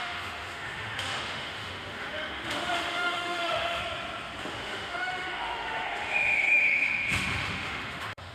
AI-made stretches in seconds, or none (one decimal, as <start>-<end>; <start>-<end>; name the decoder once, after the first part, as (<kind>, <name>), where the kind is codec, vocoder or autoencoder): 0.0-3.8 (autoencoder, DAC-VAE); 4.4-8.3